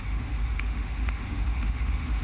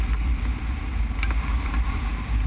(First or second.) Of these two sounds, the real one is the second